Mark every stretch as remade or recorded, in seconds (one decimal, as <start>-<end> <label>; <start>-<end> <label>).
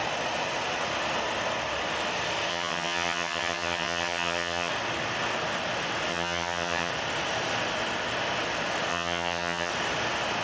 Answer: 0.0-2.5 recorded; 2.5-4.7 remade; 4.7-6.1 recorded; 6.1-6.9 remade; 6.9-8.9 recorded; 8.9-9.7 remade; 9.7-10.4 recorded